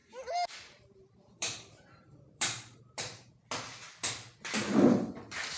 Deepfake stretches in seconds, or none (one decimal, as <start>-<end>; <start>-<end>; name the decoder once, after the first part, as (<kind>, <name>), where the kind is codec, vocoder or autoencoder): 0.0-3.4 (vocoder, BigVGAN v2)